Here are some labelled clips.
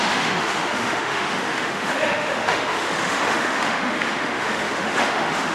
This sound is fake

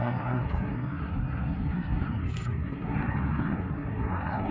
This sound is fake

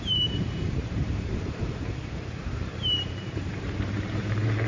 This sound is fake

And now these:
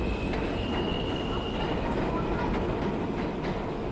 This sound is real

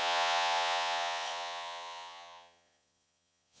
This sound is fake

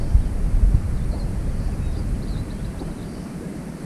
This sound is fake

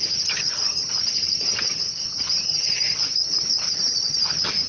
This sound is fake